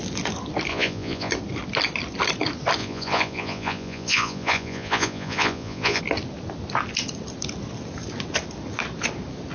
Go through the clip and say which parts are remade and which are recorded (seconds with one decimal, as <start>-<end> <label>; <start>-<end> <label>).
0.0-0.7 recorded; 0.7-1.3 remade; 1.3-2.8 recorded; 2.8-6.0 remade; 6.0-9.5 recorded